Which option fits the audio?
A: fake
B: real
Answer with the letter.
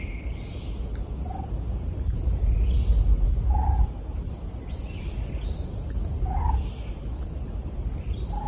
B